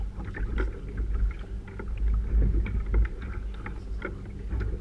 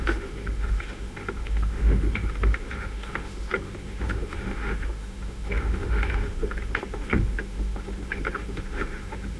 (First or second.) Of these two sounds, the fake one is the second